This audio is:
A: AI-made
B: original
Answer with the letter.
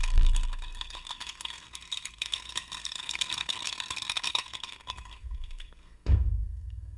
A